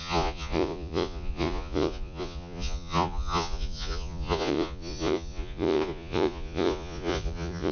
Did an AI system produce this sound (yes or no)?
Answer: yes